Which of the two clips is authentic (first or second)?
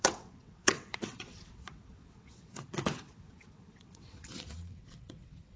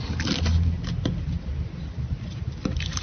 second